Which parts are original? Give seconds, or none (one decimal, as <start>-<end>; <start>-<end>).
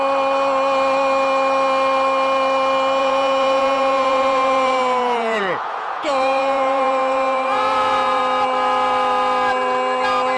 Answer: 0.0-3.0; 8.2-10.4